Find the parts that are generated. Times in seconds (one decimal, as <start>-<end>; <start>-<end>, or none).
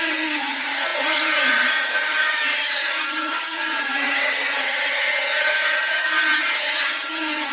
0.0-7.5